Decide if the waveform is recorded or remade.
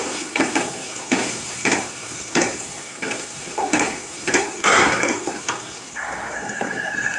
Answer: remade